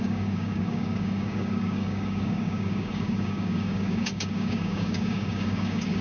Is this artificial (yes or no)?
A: yes